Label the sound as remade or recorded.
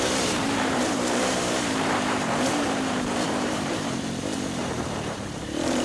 remade